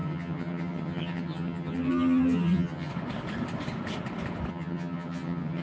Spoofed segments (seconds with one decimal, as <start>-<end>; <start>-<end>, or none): 0.0-2.9; 4.5-5.6